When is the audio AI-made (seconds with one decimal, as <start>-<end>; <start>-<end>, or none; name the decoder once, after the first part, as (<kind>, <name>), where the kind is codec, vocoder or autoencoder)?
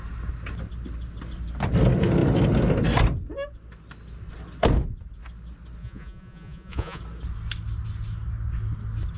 5.8-7.0 (vocoder, Vocos)